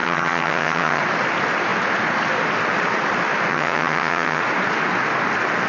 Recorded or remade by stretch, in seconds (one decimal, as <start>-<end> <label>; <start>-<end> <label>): 0.0-1.0 remade; 1.0-3.5 recorded; 3.5-4.4 remade; 4.4-5.7 recorded